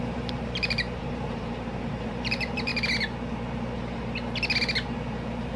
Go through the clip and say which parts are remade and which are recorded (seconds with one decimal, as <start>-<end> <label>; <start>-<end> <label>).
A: 0.0-2.7 remade; 2.7-5.6 recorded